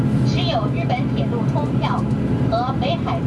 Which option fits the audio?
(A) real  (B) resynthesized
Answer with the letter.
A